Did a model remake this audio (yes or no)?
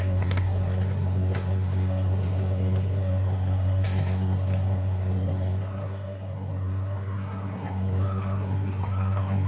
yes